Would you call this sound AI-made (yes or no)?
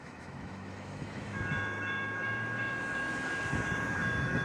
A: yes